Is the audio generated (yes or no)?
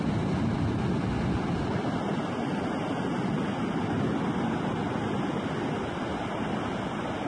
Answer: no